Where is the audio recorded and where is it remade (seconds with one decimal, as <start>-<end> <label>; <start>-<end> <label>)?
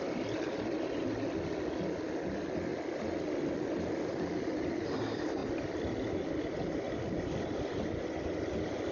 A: 0.0-8.9 recorded